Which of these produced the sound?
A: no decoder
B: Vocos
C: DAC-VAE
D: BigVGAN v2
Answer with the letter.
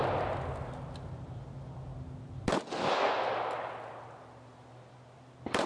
A